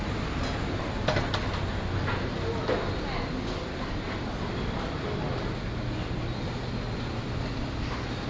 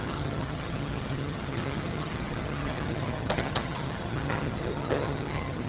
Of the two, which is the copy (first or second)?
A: second